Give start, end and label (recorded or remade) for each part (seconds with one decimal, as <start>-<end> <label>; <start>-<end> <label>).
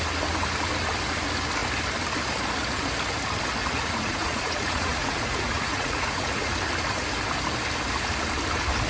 0.0-3.6 recorded; 3.6-6.5 remade; 6.5-8.9 recorded